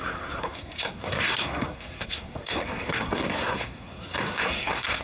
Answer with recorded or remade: remade